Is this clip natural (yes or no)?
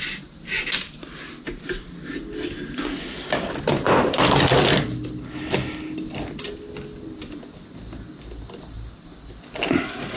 yes